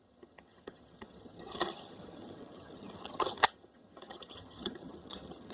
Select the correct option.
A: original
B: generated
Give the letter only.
B